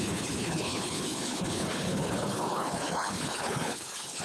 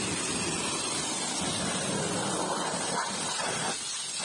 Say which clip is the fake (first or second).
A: first